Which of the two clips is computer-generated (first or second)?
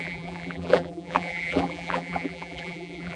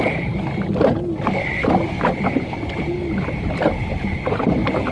first